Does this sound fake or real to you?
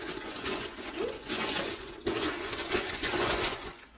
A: fake